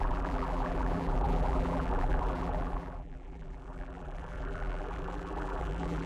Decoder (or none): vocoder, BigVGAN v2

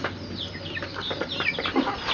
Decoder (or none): none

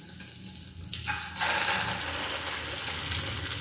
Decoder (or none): none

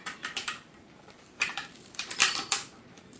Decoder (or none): vocoder, BigVGAN v2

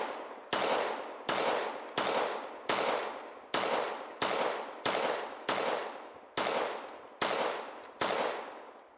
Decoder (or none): none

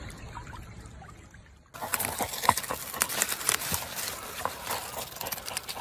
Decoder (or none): none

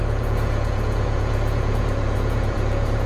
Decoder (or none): vocoder, Vocos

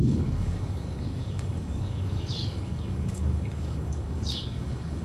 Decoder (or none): codec, DAC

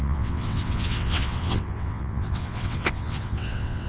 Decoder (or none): vocoder, WaveNeXt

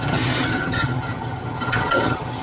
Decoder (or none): vocoder, HiFi-GAN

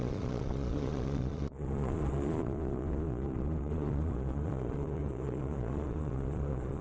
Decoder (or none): vocoder, Vocos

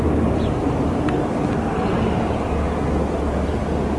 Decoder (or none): none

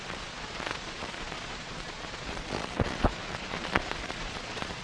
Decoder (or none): vocoder, Vocos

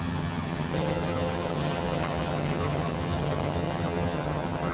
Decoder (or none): vocoder, HiFi-GAN